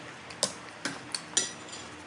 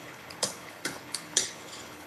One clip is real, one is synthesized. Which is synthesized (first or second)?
second